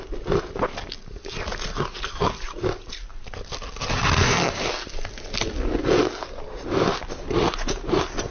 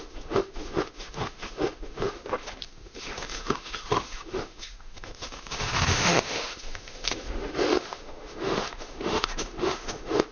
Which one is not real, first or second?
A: second